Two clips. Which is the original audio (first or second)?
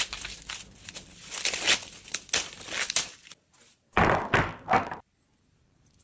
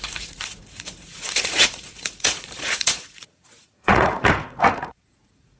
first